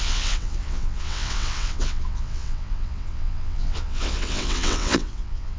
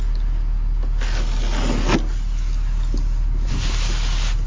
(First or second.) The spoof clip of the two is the first